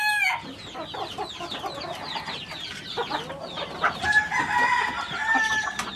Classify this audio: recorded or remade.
recorded